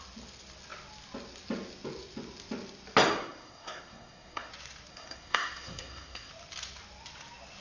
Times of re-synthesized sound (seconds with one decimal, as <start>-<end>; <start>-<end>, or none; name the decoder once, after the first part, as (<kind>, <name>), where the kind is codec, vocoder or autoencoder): 3.1-4.5 (codec, SNAC); 4.9-6.3

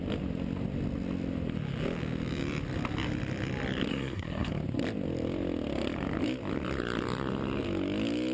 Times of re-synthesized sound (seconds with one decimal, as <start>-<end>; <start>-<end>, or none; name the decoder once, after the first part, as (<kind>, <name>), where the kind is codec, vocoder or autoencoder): 3.9-4.5 (codec, SNAC)

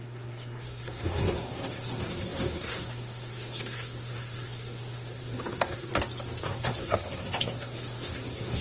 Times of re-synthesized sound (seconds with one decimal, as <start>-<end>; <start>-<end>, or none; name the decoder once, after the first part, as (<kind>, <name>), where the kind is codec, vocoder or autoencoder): 0.0-5.9 (codec, SNAC); 6.4-8.6

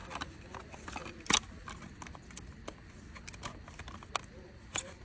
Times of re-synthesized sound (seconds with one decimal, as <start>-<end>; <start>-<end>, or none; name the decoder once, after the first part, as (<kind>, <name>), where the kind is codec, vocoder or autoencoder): none

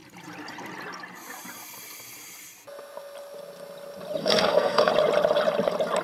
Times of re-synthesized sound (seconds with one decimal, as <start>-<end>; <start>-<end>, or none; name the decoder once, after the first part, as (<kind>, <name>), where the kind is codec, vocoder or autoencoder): 4.2-4.9 (codec, SNAC)